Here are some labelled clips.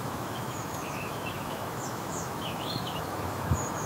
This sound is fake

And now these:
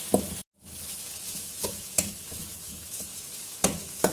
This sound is fake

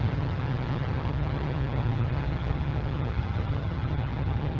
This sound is fake